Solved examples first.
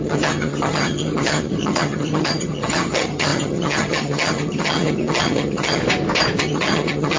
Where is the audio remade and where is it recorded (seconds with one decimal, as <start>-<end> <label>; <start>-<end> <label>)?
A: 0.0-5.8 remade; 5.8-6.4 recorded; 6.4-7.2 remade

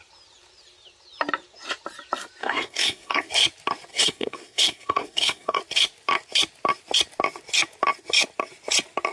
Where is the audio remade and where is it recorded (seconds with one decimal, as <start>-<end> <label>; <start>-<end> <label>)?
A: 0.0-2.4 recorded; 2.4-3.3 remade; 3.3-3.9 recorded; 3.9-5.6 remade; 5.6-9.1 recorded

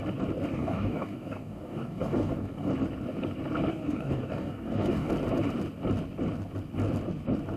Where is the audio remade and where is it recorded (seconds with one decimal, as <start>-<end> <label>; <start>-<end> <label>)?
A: 0.0-0.5 recorded; 0.5-2.7 remade; 2.7-3.7 recorded; 3.7-5.1 remade; 5.1-7.6 recorded

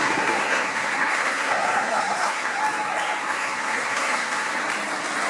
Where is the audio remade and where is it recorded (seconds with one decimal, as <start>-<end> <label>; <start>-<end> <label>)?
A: 0.0-2.6 remade; 2.6-3.2 recorded; 3.2-4.6 remade; 4.6-5.3 recorded

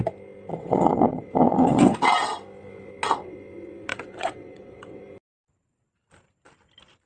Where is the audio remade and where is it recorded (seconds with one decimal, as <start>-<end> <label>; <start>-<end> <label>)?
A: 0.0-0.5 recorded; 0.5-1.9 remade; 1.9-3.9 recorded; 3.9-5.0 remade; 5.0-7.1 recorded